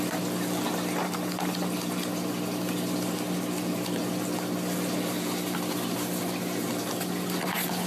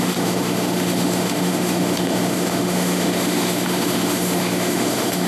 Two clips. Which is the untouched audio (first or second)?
first